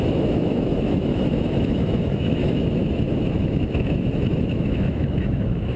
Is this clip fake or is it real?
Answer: fake